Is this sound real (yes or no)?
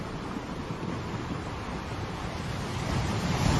yes